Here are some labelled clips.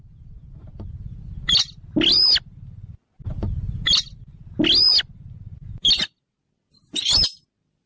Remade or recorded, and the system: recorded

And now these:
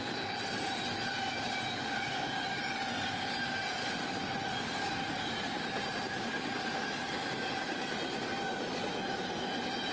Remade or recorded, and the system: recorded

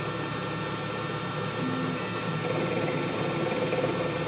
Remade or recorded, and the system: recorded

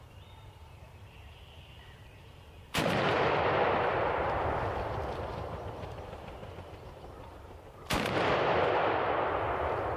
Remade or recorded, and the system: remade, vocoder, BigVGAN v2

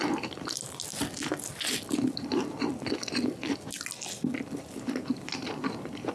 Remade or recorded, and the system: recorded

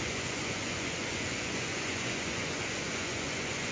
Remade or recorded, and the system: remade, vocoder, Vocos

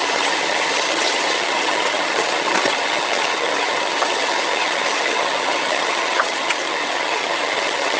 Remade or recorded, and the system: remade, vocoder, HiFi-GAN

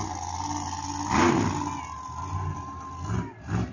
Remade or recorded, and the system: recorded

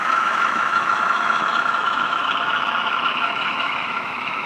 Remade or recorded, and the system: remade, autoencoder, DAC-VAE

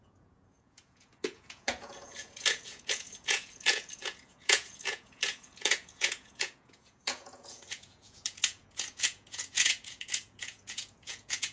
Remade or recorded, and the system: remade, vocoder, Vocos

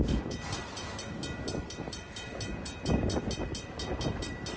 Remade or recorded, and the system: recorded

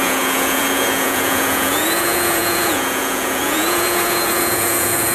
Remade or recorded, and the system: remade, vocoder, Vocos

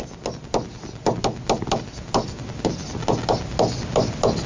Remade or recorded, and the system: recorded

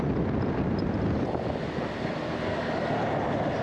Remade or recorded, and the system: recorded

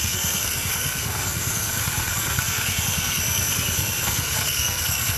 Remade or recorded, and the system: remade, codec, SNAC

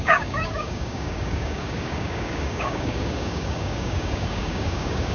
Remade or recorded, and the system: remade, codec, DAC